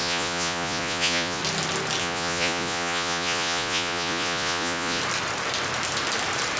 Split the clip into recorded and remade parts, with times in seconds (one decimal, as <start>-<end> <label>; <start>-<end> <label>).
0.0-1.4 remade; 1.4-2.0 recorded; 2.0-5.0 remade; 5.0-6.6 recorded